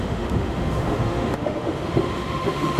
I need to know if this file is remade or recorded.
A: remade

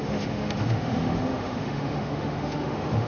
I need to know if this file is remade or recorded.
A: remade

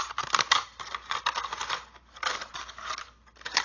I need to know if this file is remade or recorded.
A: recorded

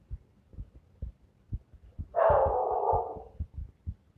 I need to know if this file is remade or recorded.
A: recorded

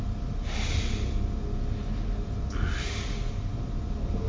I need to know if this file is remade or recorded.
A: recorded